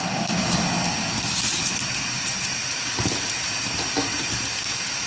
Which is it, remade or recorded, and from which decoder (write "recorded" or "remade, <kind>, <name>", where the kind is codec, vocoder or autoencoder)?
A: recorded